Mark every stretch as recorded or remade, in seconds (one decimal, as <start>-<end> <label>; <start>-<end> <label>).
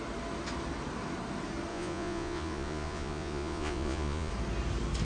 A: 0.0-1.7 recorded; 1.7-4.3 remade; 4.3-5.0 recorded